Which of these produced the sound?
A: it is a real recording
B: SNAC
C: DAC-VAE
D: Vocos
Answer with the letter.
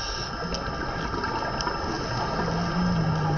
A